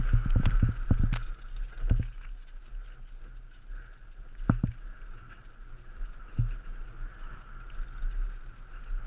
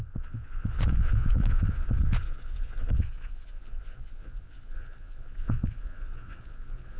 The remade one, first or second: second